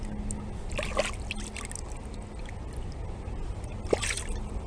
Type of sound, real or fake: real